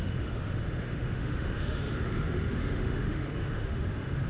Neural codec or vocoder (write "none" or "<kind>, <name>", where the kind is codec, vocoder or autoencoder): autoencoder, DAC-VAE